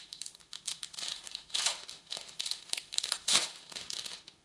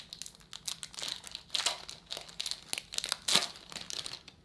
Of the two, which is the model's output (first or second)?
first